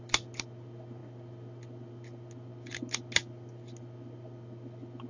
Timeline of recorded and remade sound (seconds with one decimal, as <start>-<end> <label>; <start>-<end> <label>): 0.0-5.1 recorded